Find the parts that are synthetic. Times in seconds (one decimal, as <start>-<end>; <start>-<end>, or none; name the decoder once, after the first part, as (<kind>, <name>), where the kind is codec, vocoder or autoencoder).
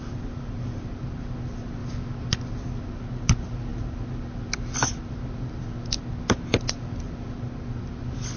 none